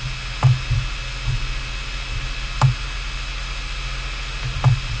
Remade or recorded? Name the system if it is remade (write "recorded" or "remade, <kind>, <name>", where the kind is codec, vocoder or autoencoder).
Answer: recorded